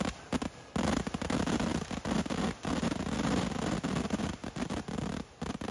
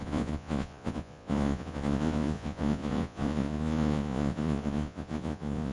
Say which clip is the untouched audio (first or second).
first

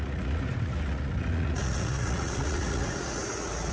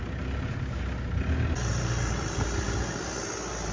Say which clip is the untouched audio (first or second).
second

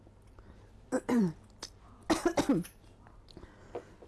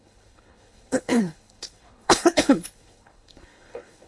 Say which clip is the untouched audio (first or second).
first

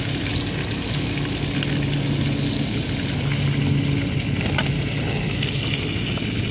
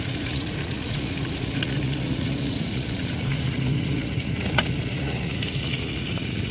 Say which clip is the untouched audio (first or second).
first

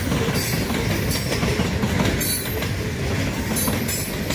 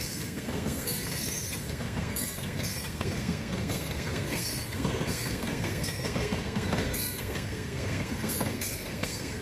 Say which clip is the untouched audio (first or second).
first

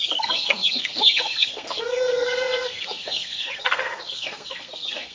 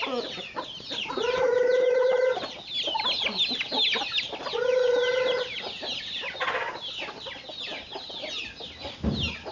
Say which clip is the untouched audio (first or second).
second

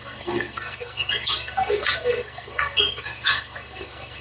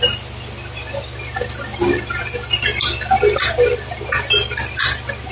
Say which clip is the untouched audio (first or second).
second